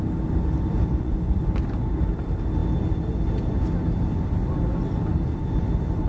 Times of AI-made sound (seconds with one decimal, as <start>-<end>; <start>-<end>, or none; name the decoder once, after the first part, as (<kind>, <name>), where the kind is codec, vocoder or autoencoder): 0.9-1.4 (vocoder, Vocos)